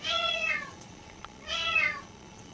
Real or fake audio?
fake